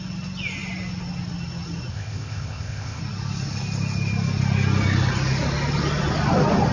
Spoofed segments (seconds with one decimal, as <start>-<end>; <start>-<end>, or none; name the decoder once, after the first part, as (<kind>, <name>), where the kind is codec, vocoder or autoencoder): 1.9-3.0 (codec, ZipCodec)

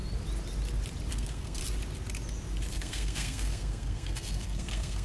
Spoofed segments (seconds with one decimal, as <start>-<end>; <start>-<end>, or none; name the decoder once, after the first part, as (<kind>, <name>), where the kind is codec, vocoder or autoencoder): 1.1-1.6 (codec, SNAC); 2.7-5.0

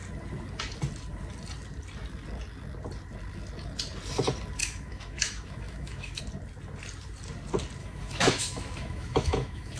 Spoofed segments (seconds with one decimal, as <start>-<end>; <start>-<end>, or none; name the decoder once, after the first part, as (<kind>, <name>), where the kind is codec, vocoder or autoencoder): 4.6-6.2 (autoencoder, DAC-VAE); 7.8-9.8

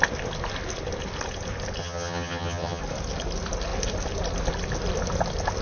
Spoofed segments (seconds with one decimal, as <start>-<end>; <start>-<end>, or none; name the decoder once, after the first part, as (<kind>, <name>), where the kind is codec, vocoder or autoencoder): 1.8-2.8 (vocoder, HiFi-GAN)

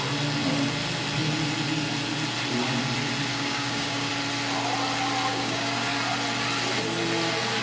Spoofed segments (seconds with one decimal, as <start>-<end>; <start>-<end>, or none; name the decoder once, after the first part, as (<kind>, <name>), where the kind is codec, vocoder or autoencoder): 3.3-4.1 (codec, DAC); 5.3-5.9